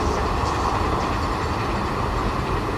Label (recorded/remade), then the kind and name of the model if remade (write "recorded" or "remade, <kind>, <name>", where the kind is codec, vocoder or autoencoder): recorded